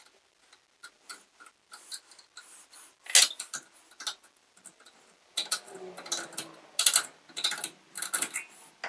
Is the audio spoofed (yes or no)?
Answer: no